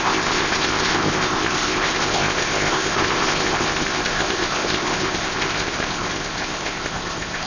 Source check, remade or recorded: remade